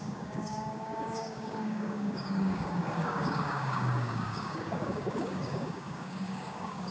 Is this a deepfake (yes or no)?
yes